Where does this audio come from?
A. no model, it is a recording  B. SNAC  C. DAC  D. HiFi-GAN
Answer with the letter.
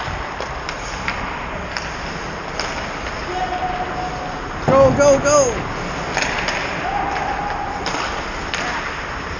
A